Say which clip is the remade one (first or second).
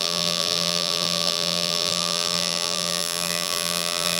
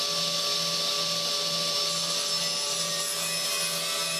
first